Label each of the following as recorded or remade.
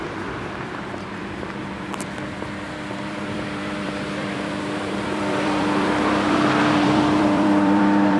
remade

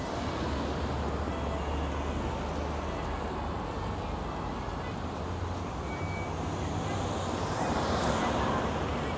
recorded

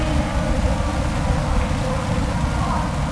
recorded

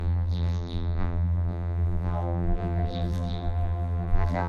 remade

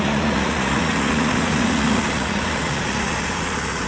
remade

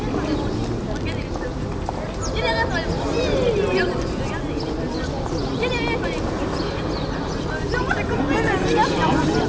recorded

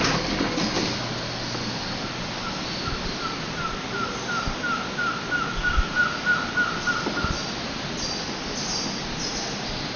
recorded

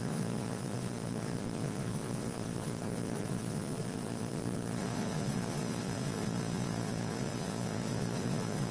remade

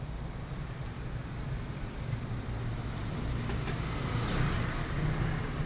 recorded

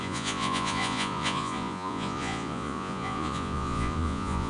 remade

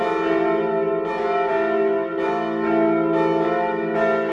recorded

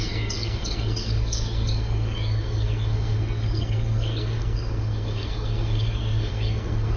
remade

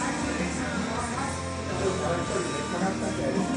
recorded